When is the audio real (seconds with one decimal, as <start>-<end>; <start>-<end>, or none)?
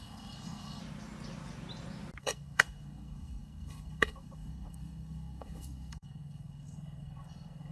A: 0.8-2.2